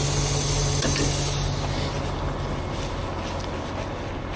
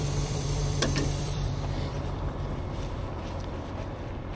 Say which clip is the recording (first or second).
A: first